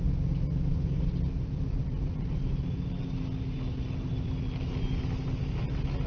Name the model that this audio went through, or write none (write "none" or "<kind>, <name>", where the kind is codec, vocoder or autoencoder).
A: none